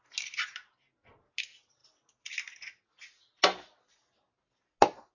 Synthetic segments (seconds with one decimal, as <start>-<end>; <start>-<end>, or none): none